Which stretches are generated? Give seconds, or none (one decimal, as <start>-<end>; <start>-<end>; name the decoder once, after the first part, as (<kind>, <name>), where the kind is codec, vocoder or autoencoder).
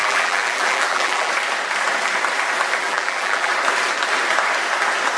0.0-1.3 (vocoder, BigVGAN v2); 2.8-3.5